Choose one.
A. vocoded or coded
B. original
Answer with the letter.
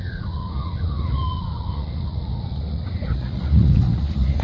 A